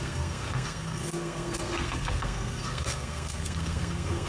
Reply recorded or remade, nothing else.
remade